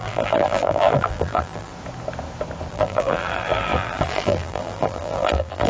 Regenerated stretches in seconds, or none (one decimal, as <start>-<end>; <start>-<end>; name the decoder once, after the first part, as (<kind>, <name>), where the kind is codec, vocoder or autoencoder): 0.0-1.7 (vocoder, BigVGAN v2); 2.7-5.7